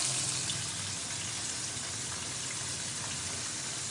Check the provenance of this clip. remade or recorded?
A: recorded